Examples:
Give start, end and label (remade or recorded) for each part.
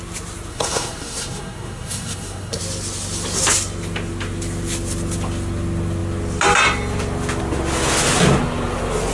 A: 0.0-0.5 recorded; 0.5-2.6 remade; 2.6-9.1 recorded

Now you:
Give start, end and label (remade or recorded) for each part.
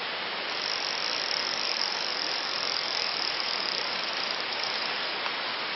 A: 0.0-1.4 recorded; 1.4-4.1 remade; 4.1-4.5 recorded; 4.5-5.2 remade; 5.2-5.8 recorded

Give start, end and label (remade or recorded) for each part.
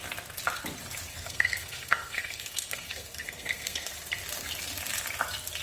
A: 0.0-1.1 recorded; 1.1-3.9 remade; 3.9-5.6 recorded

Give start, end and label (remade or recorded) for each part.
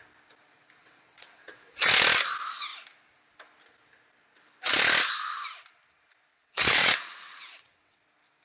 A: 0.0-0.8 recorded; 0.8-1.9 remade; 1.9-6.3 recorded; 6.3-8.0 remade; 8.0-8.4 recorded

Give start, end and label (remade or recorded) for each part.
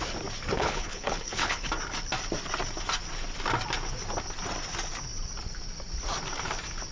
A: 0.0-0.6 recorded; 0.6-1.7 remade; 1.7-6.9 recorded